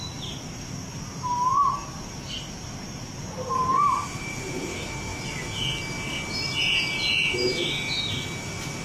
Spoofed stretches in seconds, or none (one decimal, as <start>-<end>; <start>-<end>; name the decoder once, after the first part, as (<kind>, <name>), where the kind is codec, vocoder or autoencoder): none